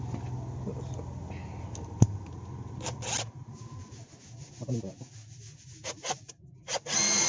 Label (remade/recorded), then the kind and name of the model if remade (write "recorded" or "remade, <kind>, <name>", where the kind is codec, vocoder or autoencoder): recorded